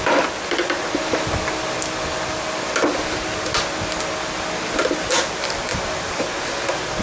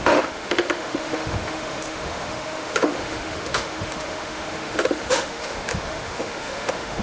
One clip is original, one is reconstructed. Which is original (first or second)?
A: first